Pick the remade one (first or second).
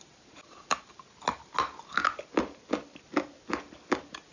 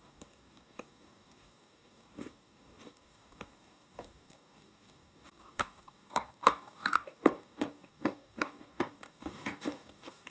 second